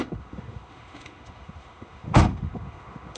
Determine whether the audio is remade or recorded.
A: remade